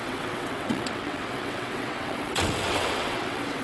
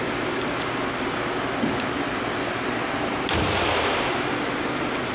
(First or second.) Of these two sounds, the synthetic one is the first